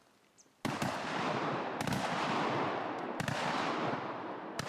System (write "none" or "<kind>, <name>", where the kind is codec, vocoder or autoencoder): none